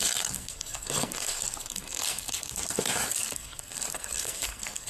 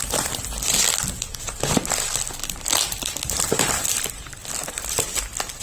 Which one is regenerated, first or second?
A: first